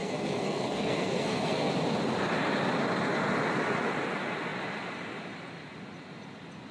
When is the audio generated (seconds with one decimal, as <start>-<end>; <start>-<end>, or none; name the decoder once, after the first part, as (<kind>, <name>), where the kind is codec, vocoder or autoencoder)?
0.0-1.7 (codec, SNAC)